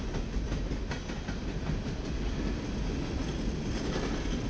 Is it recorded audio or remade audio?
recorded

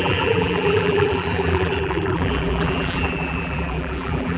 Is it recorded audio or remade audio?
remade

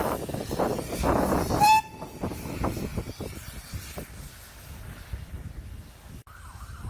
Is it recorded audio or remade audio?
recorded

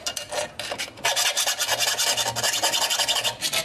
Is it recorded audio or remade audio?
recorded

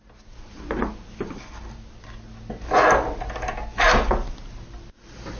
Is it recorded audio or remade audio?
recorded